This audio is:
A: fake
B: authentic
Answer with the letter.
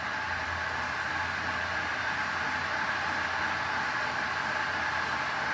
B